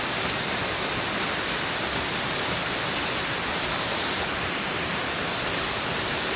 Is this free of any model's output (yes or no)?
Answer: yes